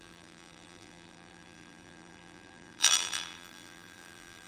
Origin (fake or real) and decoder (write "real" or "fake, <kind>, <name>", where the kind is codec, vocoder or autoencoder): fake, vocoder, BigVGAN v2